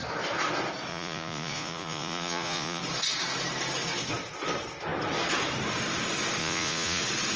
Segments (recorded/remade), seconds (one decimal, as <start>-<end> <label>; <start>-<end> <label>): 0.0-0.9 recorded; 0.9-2.8 remade; 2.8-6.4 recorded; 6.4-7.0 remade; 7.0-7.4 recorded